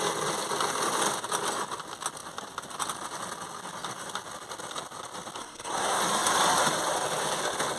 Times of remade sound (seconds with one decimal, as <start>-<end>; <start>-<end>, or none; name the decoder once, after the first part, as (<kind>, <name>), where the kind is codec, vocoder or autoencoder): 5.4-6.0 (codec, SNAC)